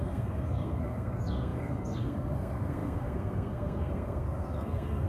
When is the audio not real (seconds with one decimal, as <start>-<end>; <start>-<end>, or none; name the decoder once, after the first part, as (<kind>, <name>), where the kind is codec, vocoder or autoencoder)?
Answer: 0.0-5.1 (codec, SNAC)